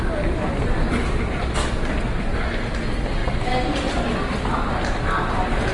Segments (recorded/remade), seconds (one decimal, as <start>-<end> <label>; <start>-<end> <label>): 0.0-5.7 recorded